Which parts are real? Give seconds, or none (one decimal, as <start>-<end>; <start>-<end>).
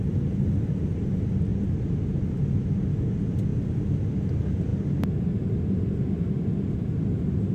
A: 0.0-7.5